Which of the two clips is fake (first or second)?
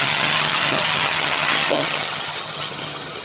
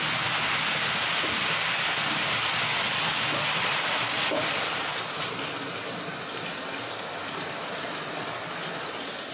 first